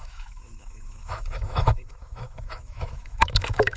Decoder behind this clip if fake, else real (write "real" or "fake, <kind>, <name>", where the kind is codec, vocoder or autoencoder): fake, autoencoder, DAC-VAE